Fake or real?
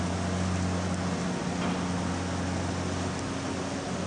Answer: real